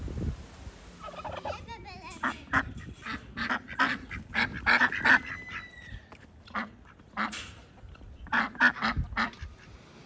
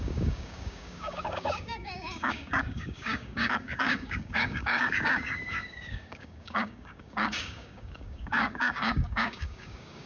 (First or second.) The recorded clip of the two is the first